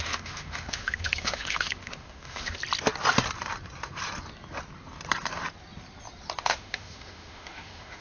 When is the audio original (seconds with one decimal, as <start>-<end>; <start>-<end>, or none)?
2.6-6.4